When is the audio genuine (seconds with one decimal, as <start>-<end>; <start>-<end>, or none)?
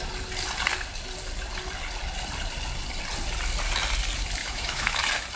0.0-4.4; 5.0-5.4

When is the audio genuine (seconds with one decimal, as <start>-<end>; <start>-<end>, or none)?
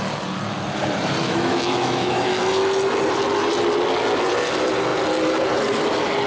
0.0-1.2; 2.4-6.3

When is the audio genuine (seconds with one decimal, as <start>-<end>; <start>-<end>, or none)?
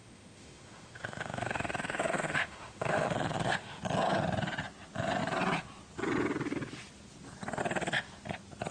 3.8-8.7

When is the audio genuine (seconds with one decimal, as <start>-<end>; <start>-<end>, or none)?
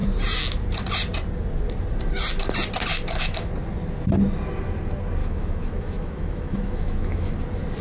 0.0-2.9; 3.5-5.2; 7.3-7.8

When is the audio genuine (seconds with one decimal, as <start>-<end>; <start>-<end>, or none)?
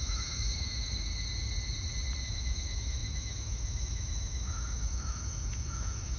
1.1-2.2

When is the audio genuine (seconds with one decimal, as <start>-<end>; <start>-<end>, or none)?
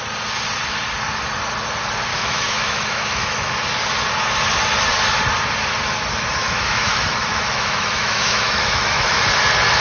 0.0-2.1; 3.5-6.4; 9.2-9.8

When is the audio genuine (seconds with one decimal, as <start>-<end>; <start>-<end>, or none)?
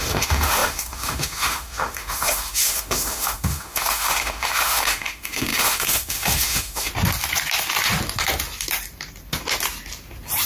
6.9-10.5